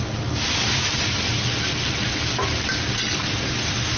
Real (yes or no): yes